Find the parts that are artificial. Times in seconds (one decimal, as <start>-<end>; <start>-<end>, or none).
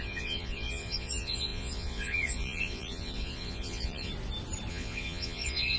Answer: 0.0-4.1; 4.7-5.8